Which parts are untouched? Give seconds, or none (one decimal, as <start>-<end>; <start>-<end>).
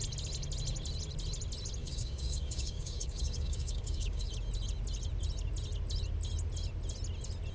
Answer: 0.0-1.8; 4.3-7.5